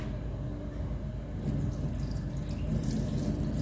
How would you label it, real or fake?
real